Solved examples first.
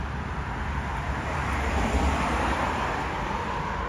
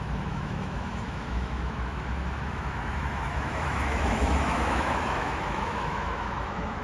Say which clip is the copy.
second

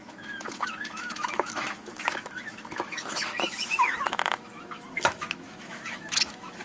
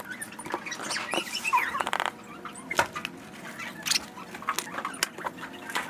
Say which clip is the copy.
first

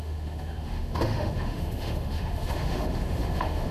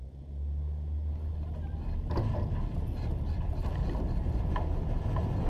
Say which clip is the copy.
first